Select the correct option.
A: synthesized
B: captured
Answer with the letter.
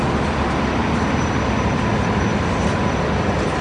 B